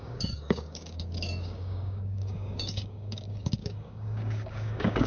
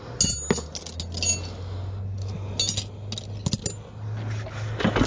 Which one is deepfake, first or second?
first